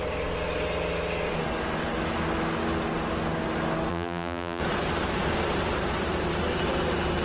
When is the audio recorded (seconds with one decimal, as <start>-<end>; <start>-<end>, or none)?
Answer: 0.0-3.9; 4.6-7.2